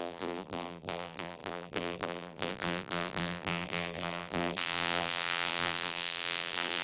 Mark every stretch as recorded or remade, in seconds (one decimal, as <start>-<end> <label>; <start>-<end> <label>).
0.0-6.8 remade